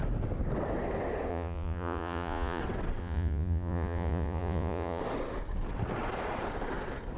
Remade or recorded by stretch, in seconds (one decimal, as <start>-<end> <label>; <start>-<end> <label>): 0.0-1.3 recorded; 1.3-2.6 remade; 2.6-3.0 recorded; 3.0-5.0 remade; 5.0-7.2 recorded